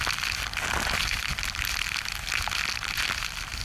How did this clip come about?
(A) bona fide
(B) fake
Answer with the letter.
A